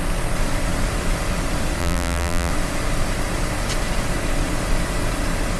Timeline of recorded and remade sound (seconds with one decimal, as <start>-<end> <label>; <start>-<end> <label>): 0.0-1.8 recorded; 1.8-2.5 remade; 2.5-5.6 recorded

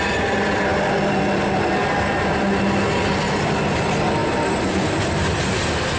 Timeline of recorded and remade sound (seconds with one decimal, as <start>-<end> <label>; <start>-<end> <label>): 0.0-4.2 recorded; 4.2-5.0 remade; 5.0-6.0 recorded